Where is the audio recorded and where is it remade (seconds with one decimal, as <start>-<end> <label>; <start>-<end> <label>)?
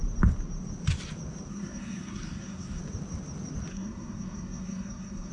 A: 0.0-1.5 recorded; 1.5-2.8 remade; 2.8-3.7 recorded; 3.7-5.3 remade